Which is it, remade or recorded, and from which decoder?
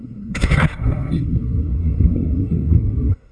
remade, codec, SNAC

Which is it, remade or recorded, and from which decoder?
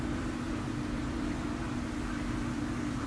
remade, vocoder, BigVGAN v2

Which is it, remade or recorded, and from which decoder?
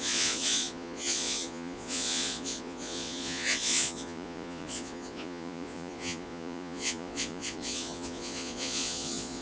remade, vocoder, Vocos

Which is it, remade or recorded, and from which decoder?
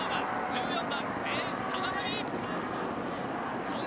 recorded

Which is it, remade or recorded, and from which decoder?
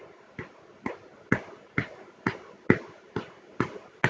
recorded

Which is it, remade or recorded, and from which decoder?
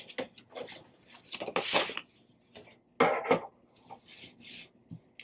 recorded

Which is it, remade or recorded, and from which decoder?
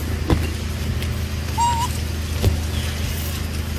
recorded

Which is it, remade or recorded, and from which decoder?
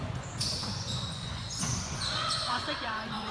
remade, vocoder, Vocos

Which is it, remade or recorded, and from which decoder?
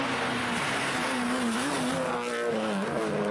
recorded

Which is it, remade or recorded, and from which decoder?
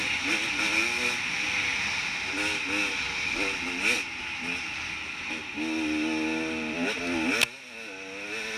recorded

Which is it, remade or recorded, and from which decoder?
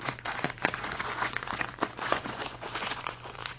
remade, vocoder, Vocos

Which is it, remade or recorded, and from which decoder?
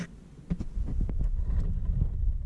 recorded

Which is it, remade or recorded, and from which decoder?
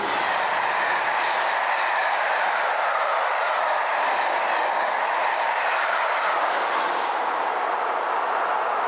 recorded